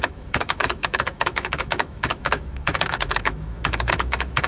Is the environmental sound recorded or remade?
remade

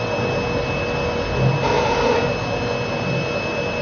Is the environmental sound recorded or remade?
recorded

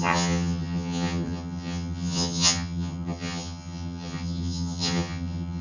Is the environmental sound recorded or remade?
remade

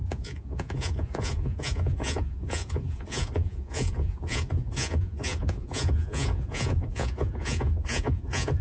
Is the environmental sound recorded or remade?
remade